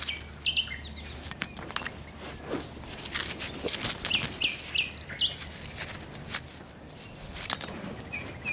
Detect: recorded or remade recorded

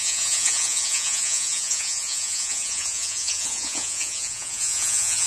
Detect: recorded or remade remade